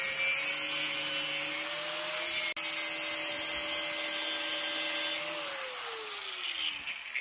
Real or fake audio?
real